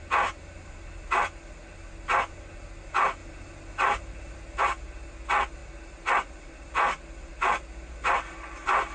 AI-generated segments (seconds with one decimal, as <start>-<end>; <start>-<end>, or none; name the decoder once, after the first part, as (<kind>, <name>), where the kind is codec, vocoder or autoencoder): none